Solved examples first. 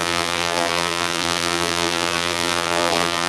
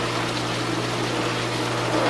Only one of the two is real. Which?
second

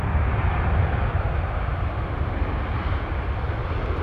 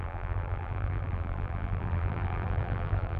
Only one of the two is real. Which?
first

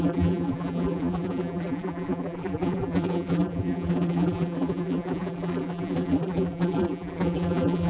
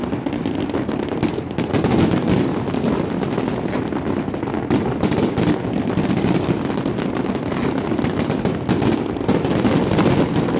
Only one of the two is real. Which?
second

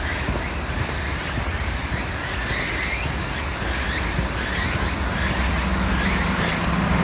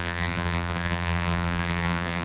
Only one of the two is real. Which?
first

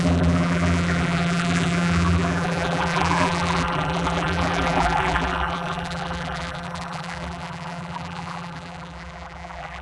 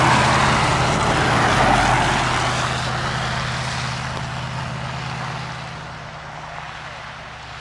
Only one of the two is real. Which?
second